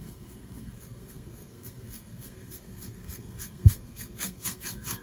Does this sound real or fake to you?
fake